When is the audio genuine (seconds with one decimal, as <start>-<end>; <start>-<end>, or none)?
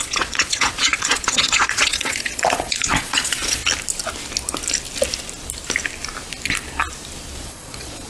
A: 3.6-7.4